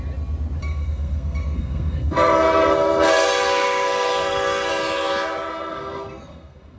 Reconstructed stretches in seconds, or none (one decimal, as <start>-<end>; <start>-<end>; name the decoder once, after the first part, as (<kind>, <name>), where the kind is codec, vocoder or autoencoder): 0.6-4.7 (codec, SNAC); 5.5-6.8